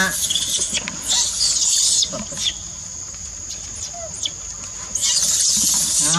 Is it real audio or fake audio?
real